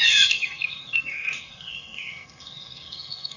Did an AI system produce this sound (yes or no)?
yes